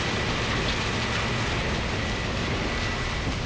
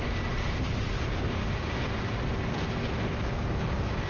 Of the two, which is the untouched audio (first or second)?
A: first